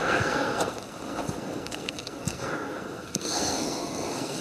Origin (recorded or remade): remade